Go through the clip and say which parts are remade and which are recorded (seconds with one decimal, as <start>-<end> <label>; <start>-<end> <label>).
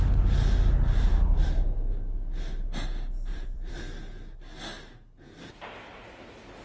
0.0-3.3 recorded; 3.3-3.8 remade; 3.8-6.6 recorded